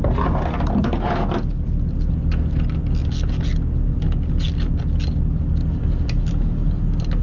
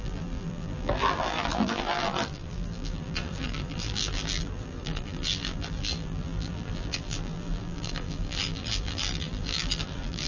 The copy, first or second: second